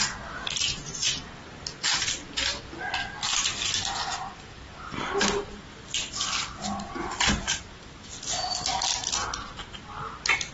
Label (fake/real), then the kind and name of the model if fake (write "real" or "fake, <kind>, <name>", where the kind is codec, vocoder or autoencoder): real